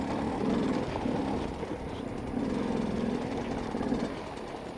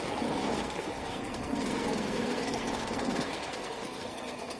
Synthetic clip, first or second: second